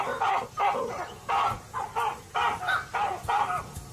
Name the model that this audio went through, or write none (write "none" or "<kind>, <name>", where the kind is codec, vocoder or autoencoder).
none